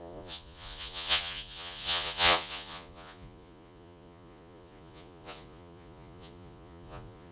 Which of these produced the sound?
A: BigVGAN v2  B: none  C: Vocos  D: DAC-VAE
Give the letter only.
C